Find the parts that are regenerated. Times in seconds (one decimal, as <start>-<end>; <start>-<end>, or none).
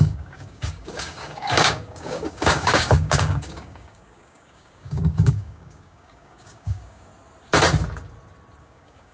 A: 0.0-7.1; 8.6-9.1